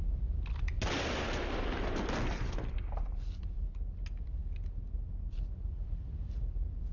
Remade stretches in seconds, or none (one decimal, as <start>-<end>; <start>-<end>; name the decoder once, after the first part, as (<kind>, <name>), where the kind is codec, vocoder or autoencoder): none